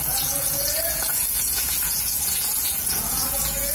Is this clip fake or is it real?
fake